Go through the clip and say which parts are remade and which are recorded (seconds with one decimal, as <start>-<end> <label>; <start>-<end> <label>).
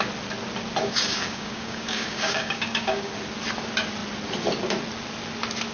0.0-0.8 recorded; 0.8-3.1 remade; 3.1-5.7 recorded